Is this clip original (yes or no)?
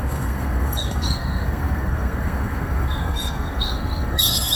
no